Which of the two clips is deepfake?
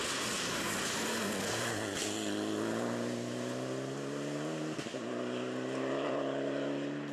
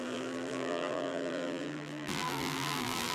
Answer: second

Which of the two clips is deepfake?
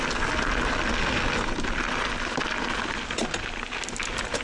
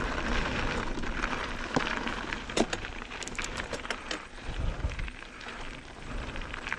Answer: second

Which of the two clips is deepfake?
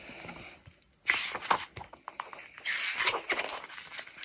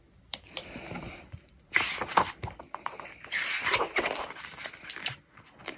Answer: second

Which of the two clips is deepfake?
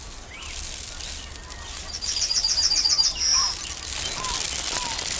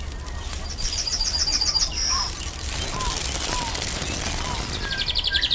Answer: second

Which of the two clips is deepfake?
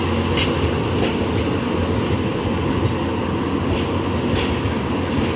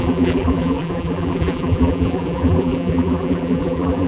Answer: second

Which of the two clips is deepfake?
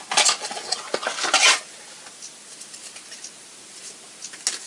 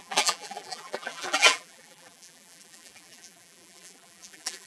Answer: second